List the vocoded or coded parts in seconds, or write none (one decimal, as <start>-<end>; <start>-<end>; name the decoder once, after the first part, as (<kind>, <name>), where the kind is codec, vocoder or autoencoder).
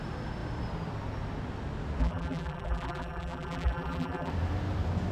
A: 2.0-4.3 (vocoder, BigVGAN v2)